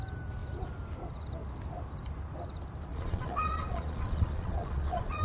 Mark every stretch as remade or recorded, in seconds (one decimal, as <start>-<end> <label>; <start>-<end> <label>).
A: 0.0-2.9 recorded; 2.9-5.2 remade